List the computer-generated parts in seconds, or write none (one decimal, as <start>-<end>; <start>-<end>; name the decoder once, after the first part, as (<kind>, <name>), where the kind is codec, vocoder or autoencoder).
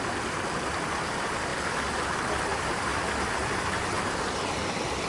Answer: none